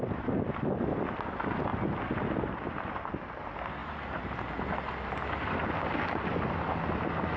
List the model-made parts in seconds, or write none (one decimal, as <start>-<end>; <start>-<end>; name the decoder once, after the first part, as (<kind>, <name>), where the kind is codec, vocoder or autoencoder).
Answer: none